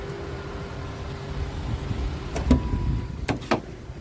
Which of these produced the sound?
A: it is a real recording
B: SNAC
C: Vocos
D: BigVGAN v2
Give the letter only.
A